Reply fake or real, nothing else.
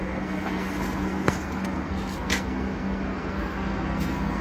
fake